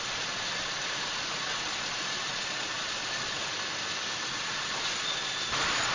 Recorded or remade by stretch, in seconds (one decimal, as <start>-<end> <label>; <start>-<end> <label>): 0.0-3.5 remade; 3.5-4.3 recorded; 4.3-5.9 remade